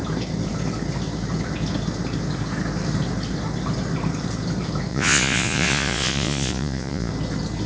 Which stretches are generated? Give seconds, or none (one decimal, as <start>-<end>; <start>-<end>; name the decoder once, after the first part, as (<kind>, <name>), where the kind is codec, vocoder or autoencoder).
4.9-7.1 (vocoder, Vocos)